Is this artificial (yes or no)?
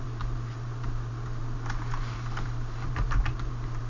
no